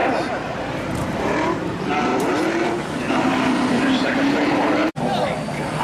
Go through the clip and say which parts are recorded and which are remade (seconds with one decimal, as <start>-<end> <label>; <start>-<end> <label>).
0.0-2.1 remade; 2.1-2.8 recorded; 2.8-4.8 remade; 4.8-5.8 recorded